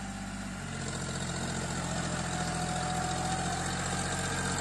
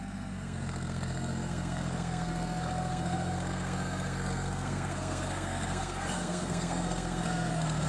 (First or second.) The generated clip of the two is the second